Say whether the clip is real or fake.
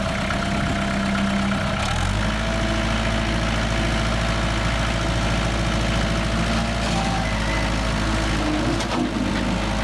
real